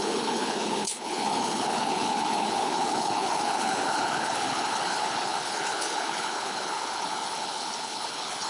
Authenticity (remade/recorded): remade